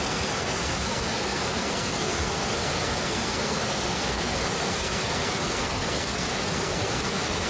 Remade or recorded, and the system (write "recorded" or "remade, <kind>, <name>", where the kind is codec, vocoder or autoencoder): remade, codec, SNAC